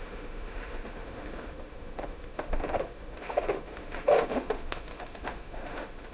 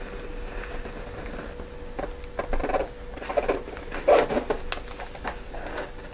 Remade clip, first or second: first